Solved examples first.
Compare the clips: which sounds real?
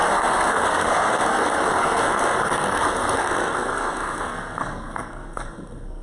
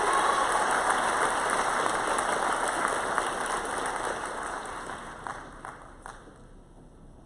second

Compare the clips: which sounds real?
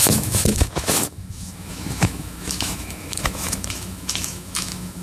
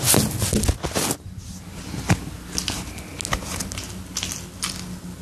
second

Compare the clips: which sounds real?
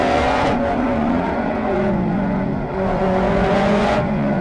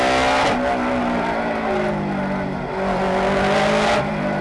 second